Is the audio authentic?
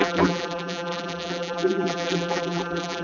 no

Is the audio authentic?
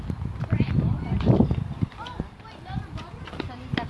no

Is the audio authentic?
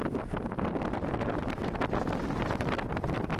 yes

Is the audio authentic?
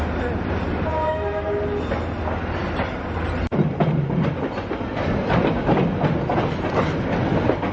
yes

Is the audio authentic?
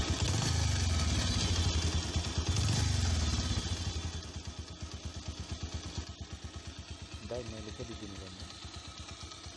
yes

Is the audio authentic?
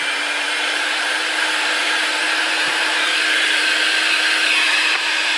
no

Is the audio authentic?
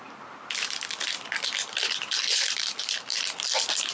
no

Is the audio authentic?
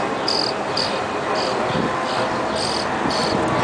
yes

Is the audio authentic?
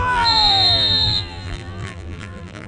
no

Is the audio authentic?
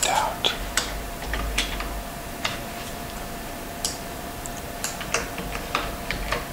no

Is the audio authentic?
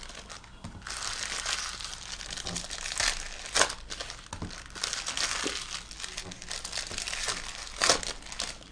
yes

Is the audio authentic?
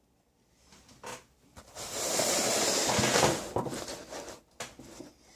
yes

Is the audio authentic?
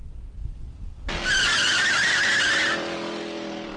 no